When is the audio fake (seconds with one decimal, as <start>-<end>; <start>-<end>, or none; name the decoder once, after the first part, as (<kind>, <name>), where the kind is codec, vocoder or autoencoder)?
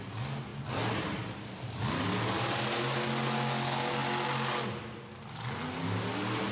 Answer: none